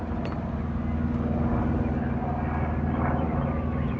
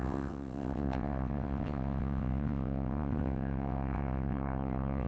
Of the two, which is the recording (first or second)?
first